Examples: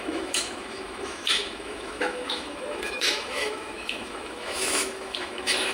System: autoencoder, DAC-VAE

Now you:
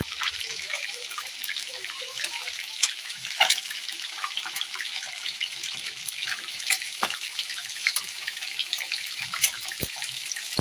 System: autoencoder, DAC-VAE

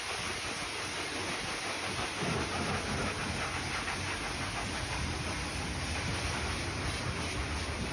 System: none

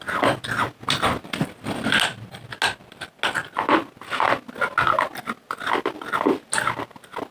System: none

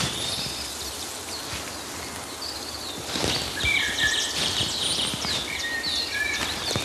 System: none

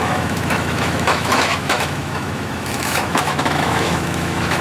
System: autoencoder, DAC-VAE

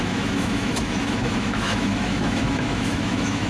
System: autoencoder, DAC-VAE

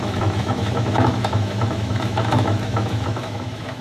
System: autoencoder, DAC-VAE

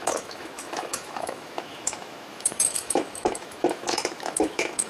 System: autoencoder, DAC-VAE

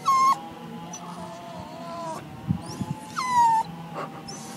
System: none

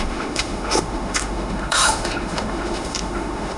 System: autoencoder, DAC-VAE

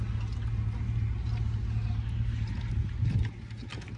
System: none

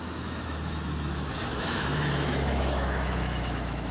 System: autoencoder, DAC-VAE